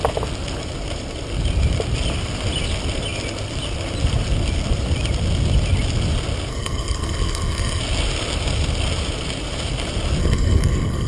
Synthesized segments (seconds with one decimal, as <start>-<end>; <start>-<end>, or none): 6.5-7.8; 10.2-11.1